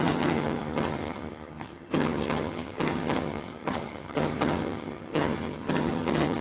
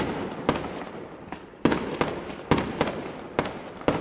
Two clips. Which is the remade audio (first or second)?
first